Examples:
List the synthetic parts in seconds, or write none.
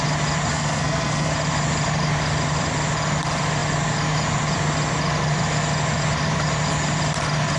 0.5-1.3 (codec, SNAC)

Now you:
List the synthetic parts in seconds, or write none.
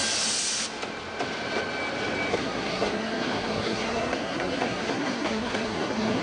2.3-6.2 (codec, SNAC)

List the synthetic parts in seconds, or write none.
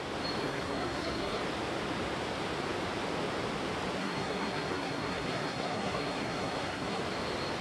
0.4-1.4 (codec, SNAC); 4.0-7.0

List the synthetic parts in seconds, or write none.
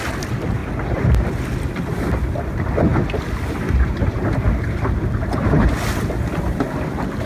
none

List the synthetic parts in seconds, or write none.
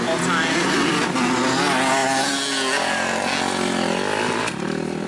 none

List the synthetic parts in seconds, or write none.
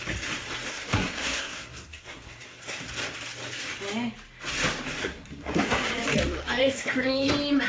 0.7-2.9 (codec, SNAC); 5.0-5.9; 6.6-7.3